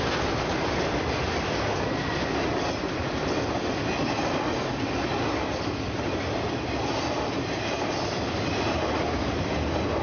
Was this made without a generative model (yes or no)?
yes